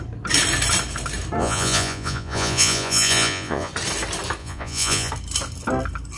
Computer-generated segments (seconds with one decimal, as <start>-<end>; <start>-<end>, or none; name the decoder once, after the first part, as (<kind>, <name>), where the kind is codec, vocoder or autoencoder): 1.4-3.7 (vocoder, Vocos); 4.4-5.1